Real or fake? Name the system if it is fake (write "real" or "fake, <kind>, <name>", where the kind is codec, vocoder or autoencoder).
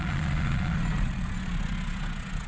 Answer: fake, vocoder, Vocos